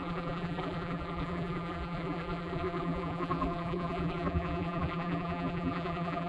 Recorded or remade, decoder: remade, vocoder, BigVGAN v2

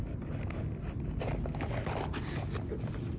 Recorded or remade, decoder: recorded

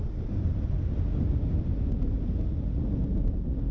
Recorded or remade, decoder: recorded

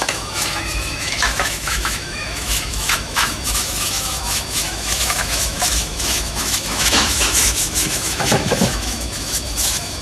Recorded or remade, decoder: remade, autoencoder, DAC-VAE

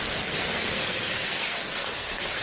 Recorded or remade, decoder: remade, codec, SNAC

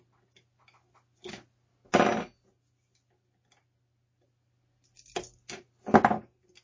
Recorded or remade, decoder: recorded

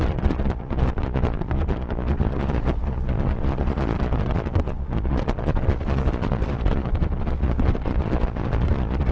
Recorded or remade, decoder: remade, vocoder, Vocos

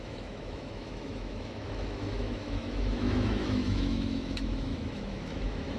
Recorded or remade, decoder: remade, autoencoder, DAC-VAE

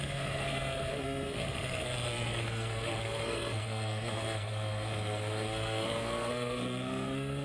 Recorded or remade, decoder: remade, codec, SNAC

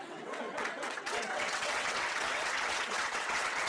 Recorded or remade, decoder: remade, vocoder, WaveNeXt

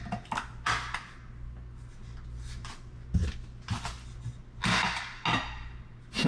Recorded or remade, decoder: recorded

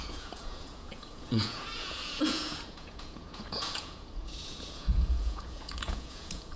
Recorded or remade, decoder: remade, vocoder, Vocos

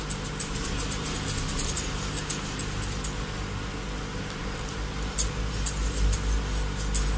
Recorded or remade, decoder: recorded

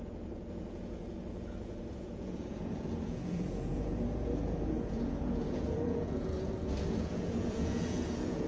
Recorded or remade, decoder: remade, vocoder, Vocos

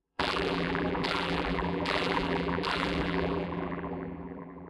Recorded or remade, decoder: remade, vocoder, BigVGAN v2